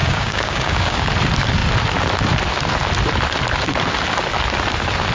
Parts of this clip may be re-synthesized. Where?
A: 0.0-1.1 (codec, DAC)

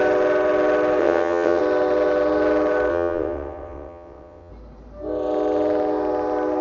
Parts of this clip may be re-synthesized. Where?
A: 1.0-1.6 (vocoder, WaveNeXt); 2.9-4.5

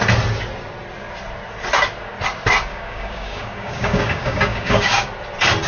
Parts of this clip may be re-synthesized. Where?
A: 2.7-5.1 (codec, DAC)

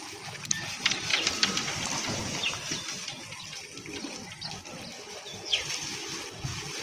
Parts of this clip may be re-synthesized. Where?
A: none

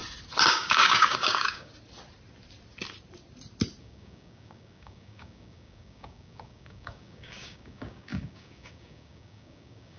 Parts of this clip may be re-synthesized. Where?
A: 0.5-1.7 (codec, DAC); 3.8-10.0

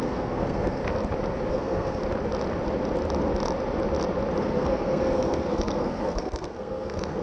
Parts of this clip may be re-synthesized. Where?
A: 0.0-0.8 (codec, SNAC); 1.5-2.0; 4.4-7.2

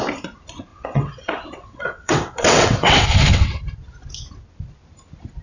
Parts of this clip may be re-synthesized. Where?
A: 0.7-3.6 (vocoder, WaveNeXt)

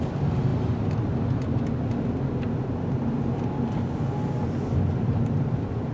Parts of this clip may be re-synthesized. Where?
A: 4.4-5.9 (vocoder, BigVGAN v2)